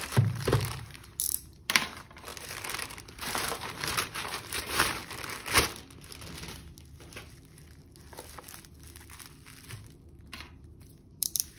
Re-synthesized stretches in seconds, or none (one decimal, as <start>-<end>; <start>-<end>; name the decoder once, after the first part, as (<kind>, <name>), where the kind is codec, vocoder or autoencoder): 0.0-2.3 (vocoder, BigVGAN v2); 3.2-5.0; 10.2-11.6